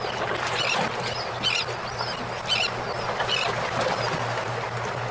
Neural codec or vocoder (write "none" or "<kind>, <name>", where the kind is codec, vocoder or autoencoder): none